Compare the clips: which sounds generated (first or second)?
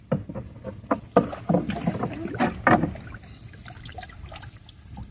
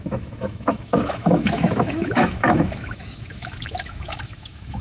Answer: second